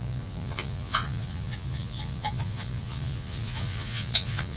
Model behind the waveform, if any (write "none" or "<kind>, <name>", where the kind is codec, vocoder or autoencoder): vocoder, Vocos